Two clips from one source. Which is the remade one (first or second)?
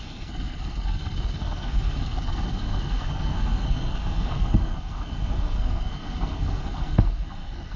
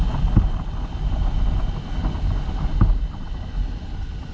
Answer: first